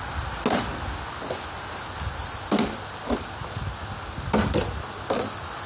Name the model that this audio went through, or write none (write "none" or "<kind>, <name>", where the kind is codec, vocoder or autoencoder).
none